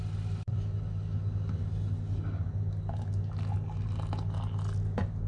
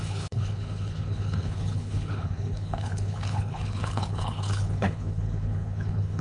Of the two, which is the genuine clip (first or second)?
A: first